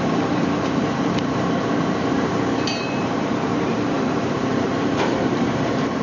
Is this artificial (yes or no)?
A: yes